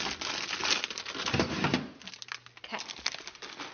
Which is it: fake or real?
real